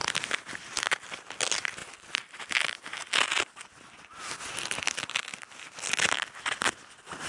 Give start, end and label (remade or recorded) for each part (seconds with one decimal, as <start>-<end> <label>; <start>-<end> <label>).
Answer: 0.0-7.3 recorded